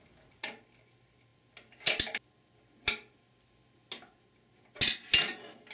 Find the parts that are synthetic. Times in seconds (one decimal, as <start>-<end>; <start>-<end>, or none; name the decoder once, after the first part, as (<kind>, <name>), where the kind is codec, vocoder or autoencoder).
none